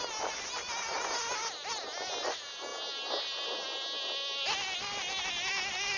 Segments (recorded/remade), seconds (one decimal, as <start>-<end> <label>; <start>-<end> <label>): 0.0-6.0 recorded